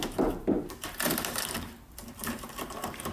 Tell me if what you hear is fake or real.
fake